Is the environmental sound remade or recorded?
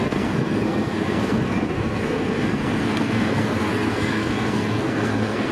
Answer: remade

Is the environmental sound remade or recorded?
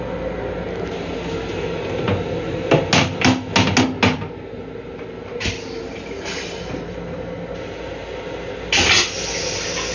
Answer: recorded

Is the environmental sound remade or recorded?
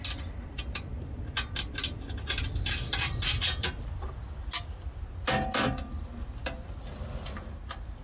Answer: recorded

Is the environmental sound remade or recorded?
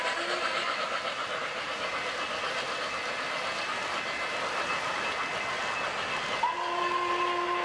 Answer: recorded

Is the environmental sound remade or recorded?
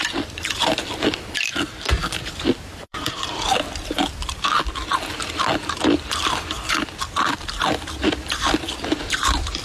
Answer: remade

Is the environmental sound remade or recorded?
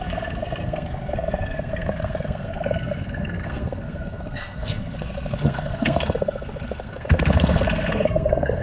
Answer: remade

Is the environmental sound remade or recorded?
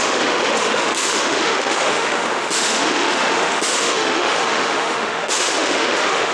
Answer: remade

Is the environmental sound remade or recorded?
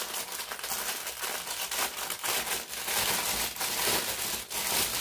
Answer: recorded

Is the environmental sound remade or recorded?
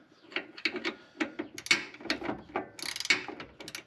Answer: recorded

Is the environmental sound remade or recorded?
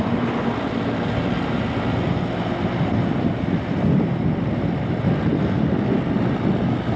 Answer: recorded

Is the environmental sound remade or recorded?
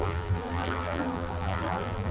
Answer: remade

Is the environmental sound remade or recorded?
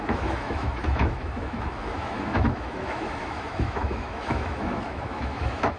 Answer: remade